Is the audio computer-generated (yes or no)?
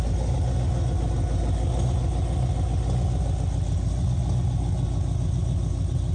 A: no